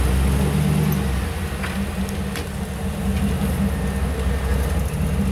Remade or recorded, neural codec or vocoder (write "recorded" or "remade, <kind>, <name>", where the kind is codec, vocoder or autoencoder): recorded